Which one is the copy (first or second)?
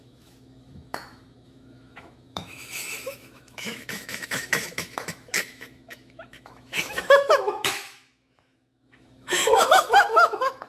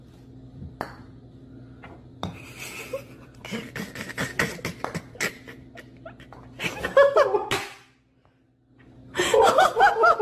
first